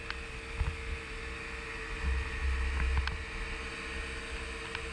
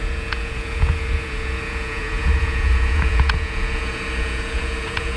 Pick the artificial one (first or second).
second